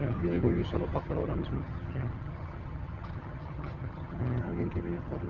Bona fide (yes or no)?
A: no